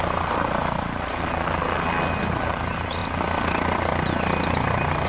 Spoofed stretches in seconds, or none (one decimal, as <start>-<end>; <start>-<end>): 0.0-1.6; 2.3-3.0